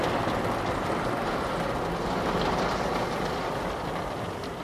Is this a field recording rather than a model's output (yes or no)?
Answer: yes